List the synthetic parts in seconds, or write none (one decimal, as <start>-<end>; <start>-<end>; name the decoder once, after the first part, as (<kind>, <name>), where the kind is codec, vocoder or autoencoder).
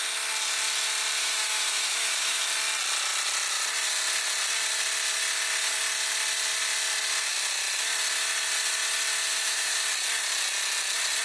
1.2-2.4 (autoencoder, DAC-VAE); 9.3-9.8